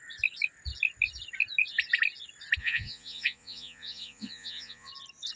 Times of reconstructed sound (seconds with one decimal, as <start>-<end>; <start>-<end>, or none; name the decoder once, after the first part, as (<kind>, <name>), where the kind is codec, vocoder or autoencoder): 2.6-4.9 (vocoder, Vocos)